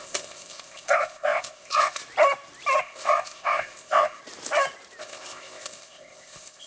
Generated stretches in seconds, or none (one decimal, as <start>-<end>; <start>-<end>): 0.0-2.0; 2.8-4.2; 5.0-6.7